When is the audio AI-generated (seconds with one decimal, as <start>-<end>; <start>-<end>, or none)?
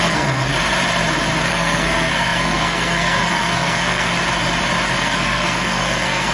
0.0-0.5; 1.5-4.1; 5.0-6.3